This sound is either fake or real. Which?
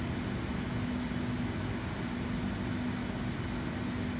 real